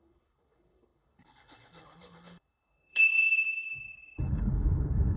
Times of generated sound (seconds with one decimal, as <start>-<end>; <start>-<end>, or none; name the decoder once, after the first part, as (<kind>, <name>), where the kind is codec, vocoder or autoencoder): 0.0-5.2 (codec, HILCodec)